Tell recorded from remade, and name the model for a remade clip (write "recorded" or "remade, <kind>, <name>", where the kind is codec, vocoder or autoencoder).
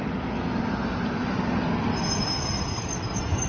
recorded